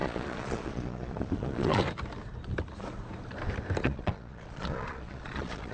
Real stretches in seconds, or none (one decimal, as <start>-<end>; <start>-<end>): 1.8-3.8